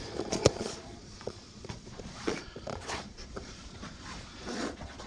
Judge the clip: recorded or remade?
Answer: remade